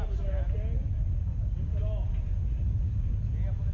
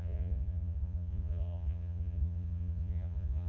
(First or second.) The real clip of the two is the first